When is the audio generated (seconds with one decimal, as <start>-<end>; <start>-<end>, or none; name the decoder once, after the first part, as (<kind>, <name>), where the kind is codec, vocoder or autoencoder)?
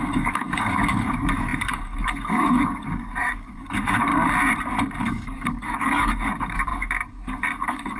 0.0-4.1 (codec, DAC); 5.0-8.0